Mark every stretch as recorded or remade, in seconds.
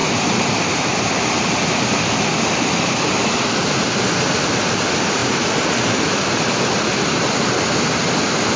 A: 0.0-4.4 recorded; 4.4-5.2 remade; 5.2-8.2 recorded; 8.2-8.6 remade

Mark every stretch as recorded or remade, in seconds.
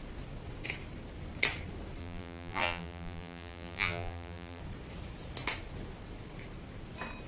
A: 0.0-2.0 recorded; 2.0-4.6 remade; 4.6-7.3 recorded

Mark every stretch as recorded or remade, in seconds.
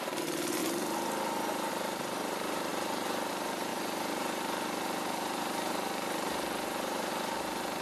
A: 0.0-0.6 remade; 0.6-1.7 recorded; 1.7-7.8 remade